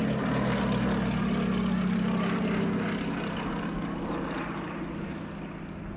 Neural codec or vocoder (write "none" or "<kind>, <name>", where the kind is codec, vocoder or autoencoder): none